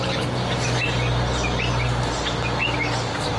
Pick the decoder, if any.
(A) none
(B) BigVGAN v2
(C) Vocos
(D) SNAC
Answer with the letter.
A